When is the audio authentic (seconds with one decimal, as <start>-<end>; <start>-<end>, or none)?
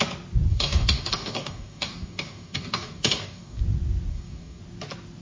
0.0-0.5; 3.6-4.1; 4.6-5.2